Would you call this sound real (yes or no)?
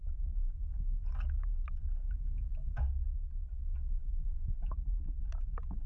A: yes